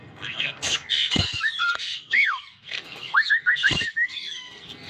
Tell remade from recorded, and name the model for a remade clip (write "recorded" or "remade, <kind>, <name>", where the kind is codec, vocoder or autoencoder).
remade, codec, SNAC